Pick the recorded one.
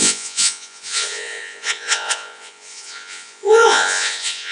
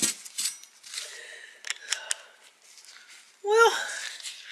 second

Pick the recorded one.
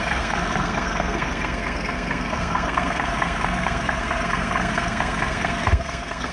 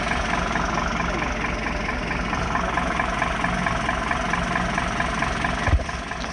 second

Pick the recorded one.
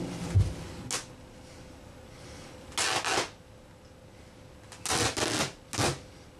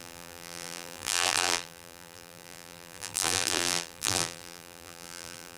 first